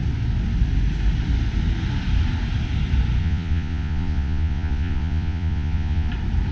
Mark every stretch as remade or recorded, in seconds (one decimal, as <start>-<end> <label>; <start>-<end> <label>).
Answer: 0.0-3.2 recorded; 3.2-6.1 remade; 6.1-6.5 recorded